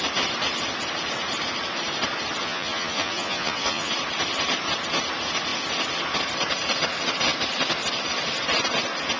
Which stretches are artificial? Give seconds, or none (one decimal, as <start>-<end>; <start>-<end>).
2.4-3.9